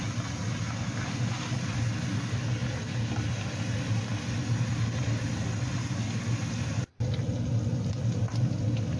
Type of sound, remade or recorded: recorded